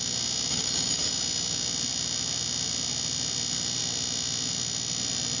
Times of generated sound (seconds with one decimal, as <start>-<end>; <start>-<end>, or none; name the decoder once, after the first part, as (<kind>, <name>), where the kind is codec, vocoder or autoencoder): 0.5-1.1 (codec, DAC)